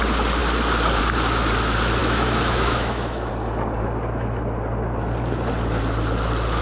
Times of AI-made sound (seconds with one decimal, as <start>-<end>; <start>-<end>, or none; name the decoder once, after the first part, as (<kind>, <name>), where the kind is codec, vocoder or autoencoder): 2.0-3.3 (autoencoder, DAC-VAE)